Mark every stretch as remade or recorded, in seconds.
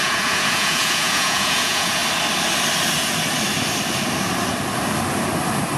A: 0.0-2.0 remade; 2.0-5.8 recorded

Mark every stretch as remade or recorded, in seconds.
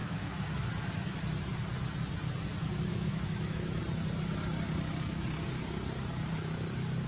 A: 0.0-0.7 remade; 0.7-2.9 recorded; 2.9-3.8 remade; 3.8-7.1 recorded